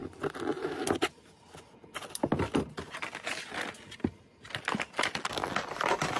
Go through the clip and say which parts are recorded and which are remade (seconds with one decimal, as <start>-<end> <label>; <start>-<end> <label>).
0.0-6.2 recorded

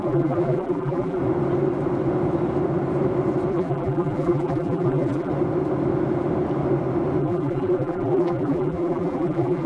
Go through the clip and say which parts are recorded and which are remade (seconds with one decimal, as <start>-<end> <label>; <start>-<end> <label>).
0.0-1.2 remade; 1.2-3.5 recorded; 3.5-5.3 remade; 5.3-7.2 recorded; 7.2-9.7 remade